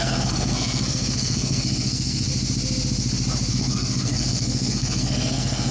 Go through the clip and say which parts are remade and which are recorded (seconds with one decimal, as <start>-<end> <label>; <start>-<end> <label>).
0.0-2.3 remade; 2.3-3.5 recorded; 3.5-5.7 remade